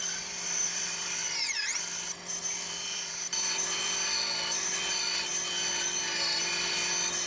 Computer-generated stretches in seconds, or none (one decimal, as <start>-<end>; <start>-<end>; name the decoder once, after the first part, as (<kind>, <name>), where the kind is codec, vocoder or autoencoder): 0.0-1.7 (vocoder, BigVGAN v2); 2.7-5.3